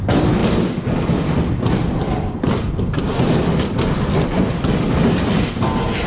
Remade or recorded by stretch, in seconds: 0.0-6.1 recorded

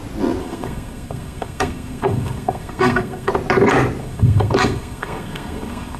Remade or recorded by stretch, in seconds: 0.0-0.4 recorded; 0.4-3.3 remade; 3.3-4.0 recorded; 4.0-6.0 remade

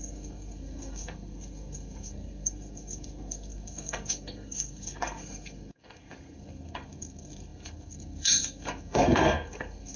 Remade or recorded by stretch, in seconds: 0.0-10.0 remade